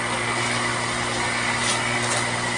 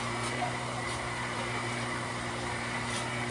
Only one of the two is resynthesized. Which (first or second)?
second